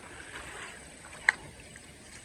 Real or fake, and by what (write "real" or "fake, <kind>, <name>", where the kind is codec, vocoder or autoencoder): real